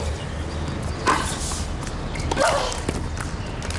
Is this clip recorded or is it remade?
recorded